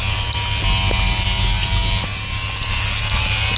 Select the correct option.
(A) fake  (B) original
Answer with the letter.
B